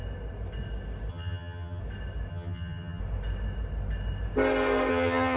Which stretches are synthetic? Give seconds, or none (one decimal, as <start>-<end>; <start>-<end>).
1.1-1.8; 2.3-3.0; 4.9-5.4